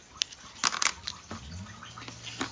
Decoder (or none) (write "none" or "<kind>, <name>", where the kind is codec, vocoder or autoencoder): none